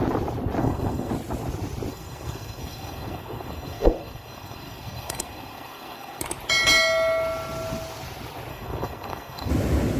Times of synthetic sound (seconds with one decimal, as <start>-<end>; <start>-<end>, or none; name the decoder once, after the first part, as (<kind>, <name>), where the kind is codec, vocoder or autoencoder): 0.6-1.1 (codec, SNAC); 1.9-6.2; 8.5-9.5